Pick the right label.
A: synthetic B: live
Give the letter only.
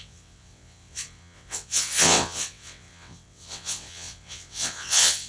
A